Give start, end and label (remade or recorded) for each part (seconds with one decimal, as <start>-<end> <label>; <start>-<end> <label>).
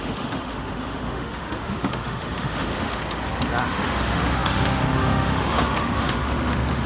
0.0-3.0 remade; 3.0-3.7 recorded; 3.7-6.9 remade